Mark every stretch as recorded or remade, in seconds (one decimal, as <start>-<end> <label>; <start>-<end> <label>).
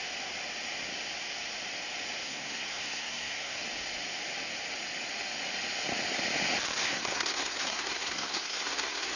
0.0-2.2 recorded; 2.2-3.6 remade; 3.6-6.8 recorded; 6.8-9.2 remade